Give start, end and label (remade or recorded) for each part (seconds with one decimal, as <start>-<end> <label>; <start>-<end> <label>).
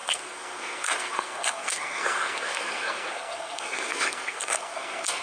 0.0-5.2 remade